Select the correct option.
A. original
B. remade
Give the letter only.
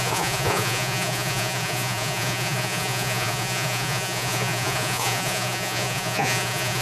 B